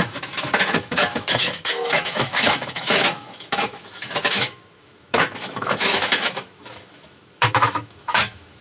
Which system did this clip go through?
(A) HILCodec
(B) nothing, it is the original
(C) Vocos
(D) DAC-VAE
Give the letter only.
D